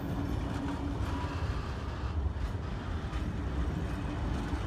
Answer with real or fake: real